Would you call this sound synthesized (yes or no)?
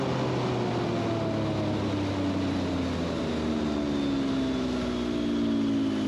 no